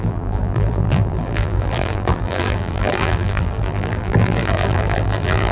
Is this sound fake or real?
fake